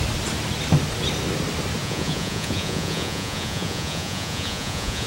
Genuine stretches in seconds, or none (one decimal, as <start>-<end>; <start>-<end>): 0.0-1.8